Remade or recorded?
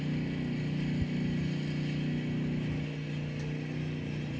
recorded